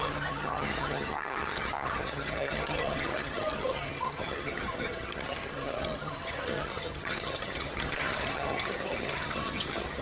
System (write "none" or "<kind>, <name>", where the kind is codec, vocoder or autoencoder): vocoder, HiFi-GAN